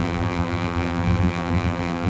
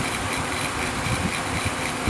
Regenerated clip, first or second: first